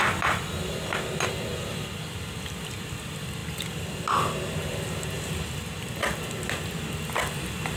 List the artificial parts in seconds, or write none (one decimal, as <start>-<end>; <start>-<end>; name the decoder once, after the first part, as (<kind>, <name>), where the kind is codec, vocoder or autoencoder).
none